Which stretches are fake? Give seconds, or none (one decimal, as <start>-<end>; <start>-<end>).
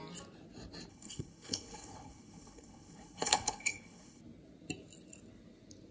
0.9-4.2